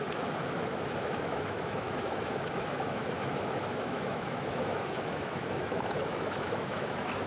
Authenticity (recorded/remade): remade